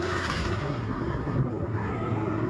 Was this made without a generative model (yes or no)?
no